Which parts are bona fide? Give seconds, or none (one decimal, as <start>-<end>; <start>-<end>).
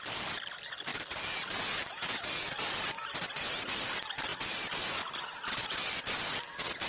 0.0-6.9